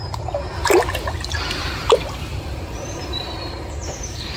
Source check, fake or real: real